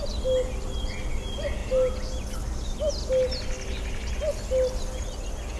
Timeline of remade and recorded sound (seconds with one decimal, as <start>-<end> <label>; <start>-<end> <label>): 0.0-5.6 recorded